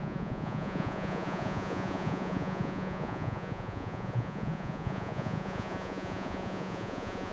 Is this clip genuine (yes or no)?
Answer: no